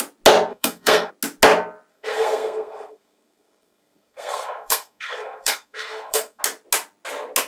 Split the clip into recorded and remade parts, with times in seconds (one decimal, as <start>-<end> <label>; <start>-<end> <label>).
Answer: 0.0-0.5 recorded; 0.5-1.1 remade; 1.1-1.9 recorded; 1.9-6.4 remade; 6.4-7.5 recorded